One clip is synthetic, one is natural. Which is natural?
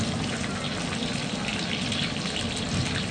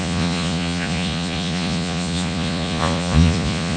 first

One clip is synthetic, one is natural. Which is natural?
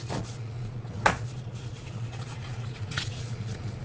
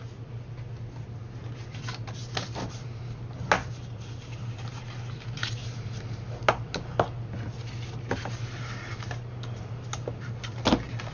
second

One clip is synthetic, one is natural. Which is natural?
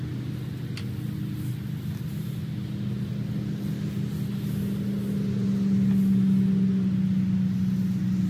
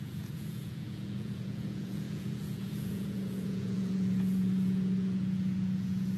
first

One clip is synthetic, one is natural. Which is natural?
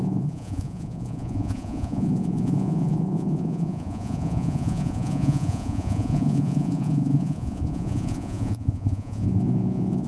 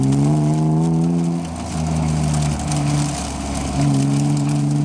second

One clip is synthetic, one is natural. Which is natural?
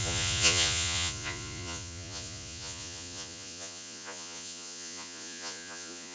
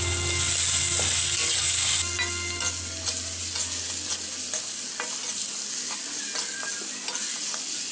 second